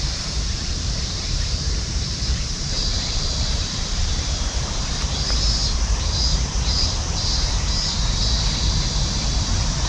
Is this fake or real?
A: fake